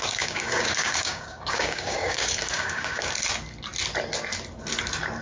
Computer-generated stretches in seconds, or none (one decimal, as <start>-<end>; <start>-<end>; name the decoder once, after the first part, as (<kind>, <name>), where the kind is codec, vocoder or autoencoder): 0.0-3.1 (codec, DAC)